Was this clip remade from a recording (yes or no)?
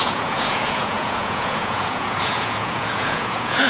yes